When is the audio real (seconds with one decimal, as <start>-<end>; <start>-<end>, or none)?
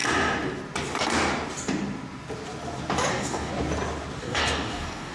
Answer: 0.0-3.1; 3.5-4.2